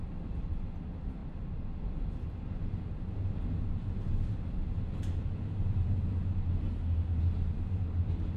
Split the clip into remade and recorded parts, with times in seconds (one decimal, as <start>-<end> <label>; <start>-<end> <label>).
0.0-8.4 recorded